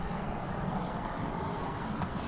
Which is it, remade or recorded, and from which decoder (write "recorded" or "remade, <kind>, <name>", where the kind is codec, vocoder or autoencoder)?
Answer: remade, codec, SNAC